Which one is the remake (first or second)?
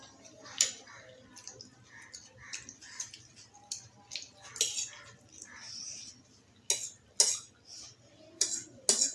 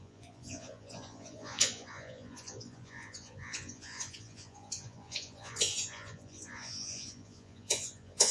second